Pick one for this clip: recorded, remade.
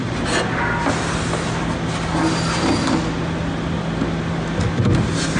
recorded